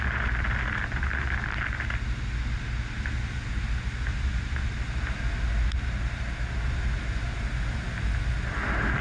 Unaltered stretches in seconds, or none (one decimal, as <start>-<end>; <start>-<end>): 0.0-9.0